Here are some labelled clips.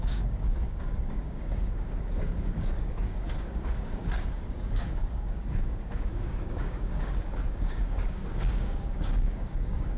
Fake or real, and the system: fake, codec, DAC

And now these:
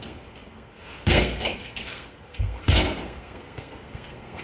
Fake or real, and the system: fake, codec, SNAC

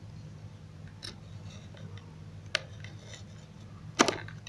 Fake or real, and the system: real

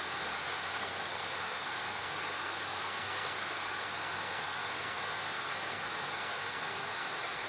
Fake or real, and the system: fake, codec, SNAC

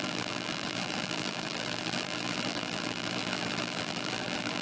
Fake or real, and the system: fake, vocoder, BigVGAN v2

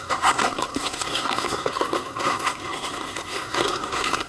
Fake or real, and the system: fake, codec, SNAC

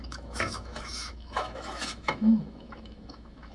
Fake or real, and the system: fake, autoencoder, DAC-VAE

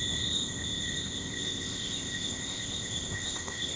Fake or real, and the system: fake, codec, ZipCodec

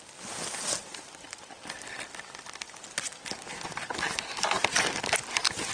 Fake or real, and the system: real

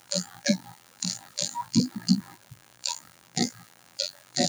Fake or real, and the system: fake, vocoder, BigVGAN v2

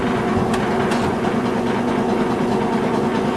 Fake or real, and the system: fake, vocoder, Vocos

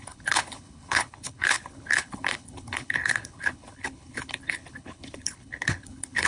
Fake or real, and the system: fake, codec, HILCodec